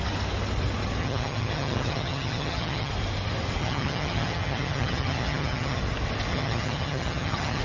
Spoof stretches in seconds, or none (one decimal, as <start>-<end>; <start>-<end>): 1.0-2.9; 3.6-5.8; 6.3-7.6